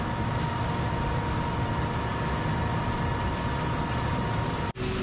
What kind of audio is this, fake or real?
real